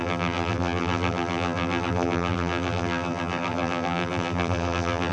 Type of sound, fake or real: fake